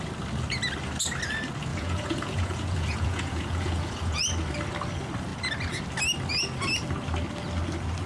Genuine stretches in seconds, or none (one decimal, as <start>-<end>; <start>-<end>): 0.0-1.7; 4.2-8.1